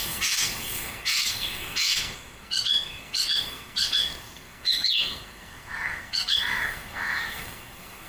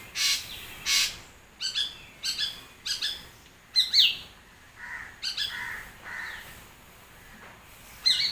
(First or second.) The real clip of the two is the second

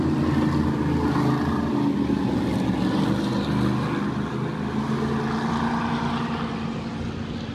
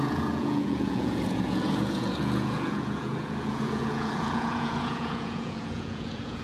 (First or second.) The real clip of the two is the first